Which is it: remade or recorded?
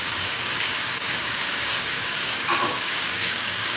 remade